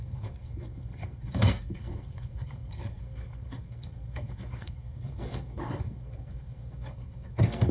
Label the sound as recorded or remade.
remade